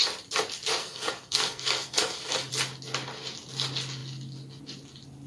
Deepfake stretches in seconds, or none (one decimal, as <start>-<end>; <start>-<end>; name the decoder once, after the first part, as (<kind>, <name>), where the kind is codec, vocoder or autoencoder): 0.8-2.5 (codec, SNAC)

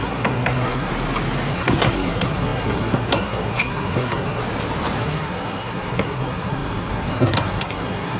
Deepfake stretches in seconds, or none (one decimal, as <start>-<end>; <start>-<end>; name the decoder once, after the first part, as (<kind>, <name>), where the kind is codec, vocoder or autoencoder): 0.0-0.9 (codec, SNAC); 1.5-4.4; 5.0-8.2

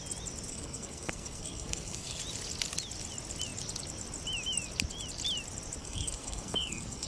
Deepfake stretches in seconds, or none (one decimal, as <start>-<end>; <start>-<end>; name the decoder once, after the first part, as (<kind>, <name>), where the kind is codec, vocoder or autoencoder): 0.5-2.2 (codec, SNAC); 5.8-7.1